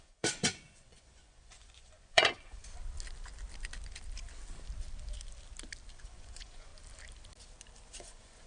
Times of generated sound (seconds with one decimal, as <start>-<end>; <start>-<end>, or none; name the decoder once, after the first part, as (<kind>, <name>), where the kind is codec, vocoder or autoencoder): 0.0-2.6 (vocoder, Vocos); 5.9-6.7; 7.9-8.5